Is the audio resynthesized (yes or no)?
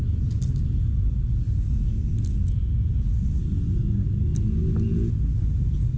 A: no